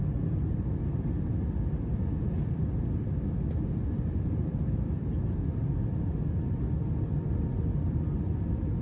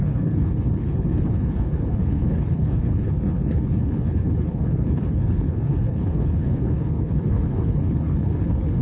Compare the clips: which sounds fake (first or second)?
second